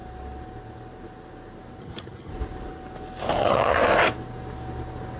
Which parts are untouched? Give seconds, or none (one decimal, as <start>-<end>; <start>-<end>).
0.0-1.8; 2.3-3.4; 3.8-5.2